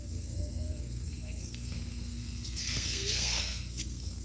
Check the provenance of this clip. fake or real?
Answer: fake